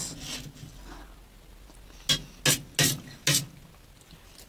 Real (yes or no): yes